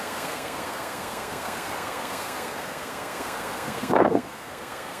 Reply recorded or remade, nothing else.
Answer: remade